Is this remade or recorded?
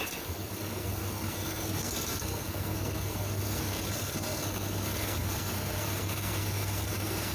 remade